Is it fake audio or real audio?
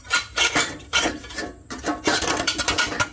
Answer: fake